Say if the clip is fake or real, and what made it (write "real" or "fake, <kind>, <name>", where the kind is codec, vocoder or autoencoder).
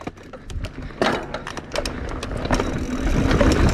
real